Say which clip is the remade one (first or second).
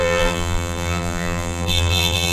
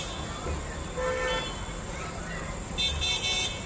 first